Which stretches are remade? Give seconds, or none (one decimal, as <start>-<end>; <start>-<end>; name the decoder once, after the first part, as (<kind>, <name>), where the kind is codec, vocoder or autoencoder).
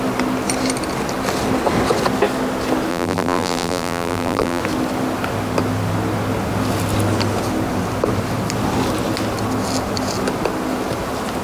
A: 2.9-4.6 (vocoder, BigVGAN v2)